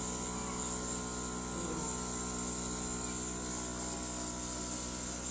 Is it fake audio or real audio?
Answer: real